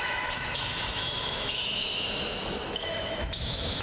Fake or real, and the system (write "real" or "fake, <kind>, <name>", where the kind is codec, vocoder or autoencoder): fake, autoencoder, DAC-VAE